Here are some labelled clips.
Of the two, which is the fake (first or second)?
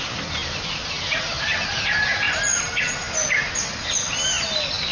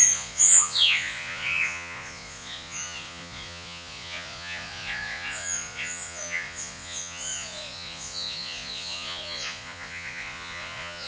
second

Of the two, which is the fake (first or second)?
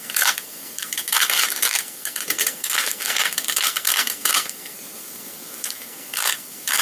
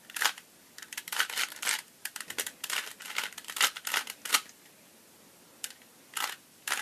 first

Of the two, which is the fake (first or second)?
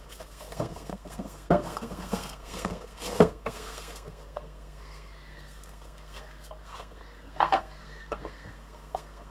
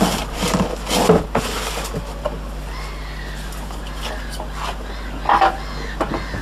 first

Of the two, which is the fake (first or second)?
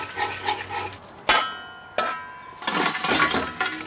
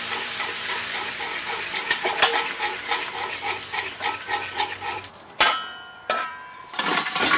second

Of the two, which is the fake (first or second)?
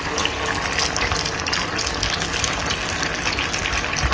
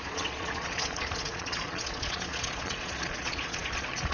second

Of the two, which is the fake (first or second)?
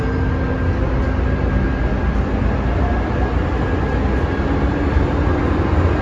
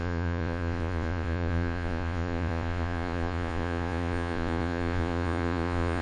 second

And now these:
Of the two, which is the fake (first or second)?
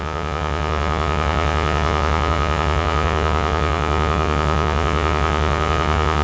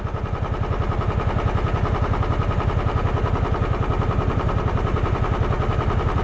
first